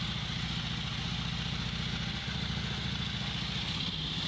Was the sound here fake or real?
real